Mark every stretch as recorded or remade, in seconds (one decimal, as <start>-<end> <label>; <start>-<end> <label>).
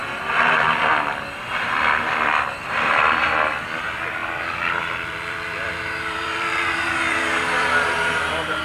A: 0.0-1.5 remade; 1.5-4.2 recorded; 4.2-8.6 remade